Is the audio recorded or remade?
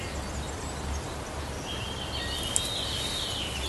recorded